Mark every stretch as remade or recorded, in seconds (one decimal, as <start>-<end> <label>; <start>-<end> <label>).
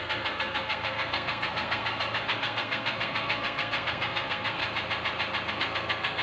0.0-4.6 remade; 4.6-5.5 recorded; 5.5-6.2 remade